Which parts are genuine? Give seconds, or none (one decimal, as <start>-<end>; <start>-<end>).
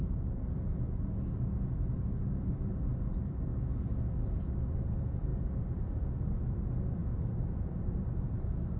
3.5-4.1